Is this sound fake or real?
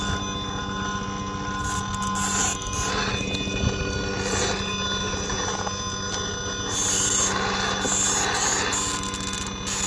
real